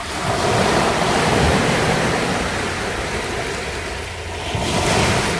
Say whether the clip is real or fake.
real